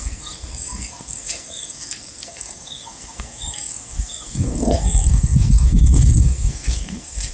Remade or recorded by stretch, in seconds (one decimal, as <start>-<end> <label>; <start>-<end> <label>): 0.0-7.3 remade